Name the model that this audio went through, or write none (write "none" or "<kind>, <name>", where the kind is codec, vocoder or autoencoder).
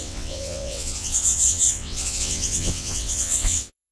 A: vocoder, WaveNeXt